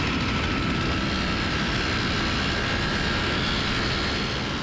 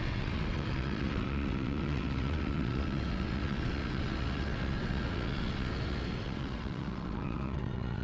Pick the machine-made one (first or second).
second